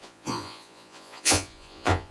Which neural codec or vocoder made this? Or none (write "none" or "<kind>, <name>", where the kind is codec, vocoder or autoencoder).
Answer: vocoder, Vocos